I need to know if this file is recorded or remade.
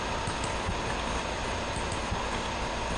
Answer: recorded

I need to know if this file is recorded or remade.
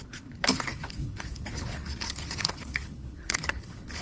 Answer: remade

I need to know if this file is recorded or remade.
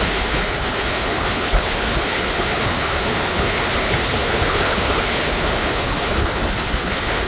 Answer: remade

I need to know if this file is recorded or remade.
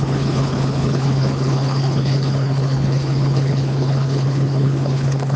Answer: remade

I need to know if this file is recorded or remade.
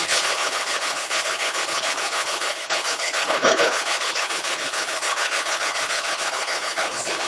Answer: remade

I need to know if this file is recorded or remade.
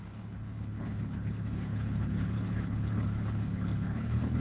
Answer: remade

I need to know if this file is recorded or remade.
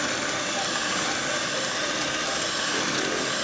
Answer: recorded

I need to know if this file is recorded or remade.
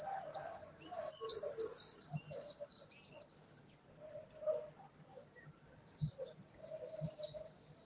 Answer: recorded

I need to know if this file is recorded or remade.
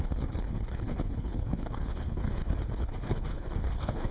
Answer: remade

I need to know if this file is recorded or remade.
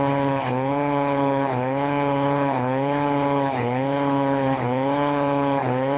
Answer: remade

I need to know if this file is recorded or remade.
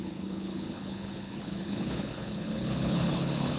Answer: remade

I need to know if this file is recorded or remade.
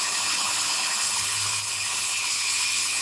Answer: remade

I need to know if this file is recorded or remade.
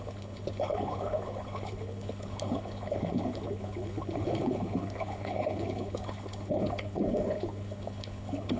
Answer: remade